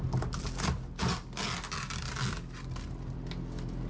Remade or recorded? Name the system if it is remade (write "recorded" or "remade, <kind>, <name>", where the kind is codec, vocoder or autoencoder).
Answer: recorded